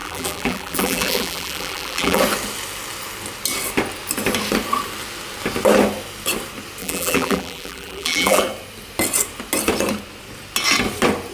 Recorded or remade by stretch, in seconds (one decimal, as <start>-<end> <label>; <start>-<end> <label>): 0.0-2.2 remade; 2.2-6.8 recorded; 6.8-8.4 remade; 8.4-11.3 recorded